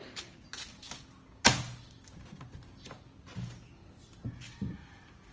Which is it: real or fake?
real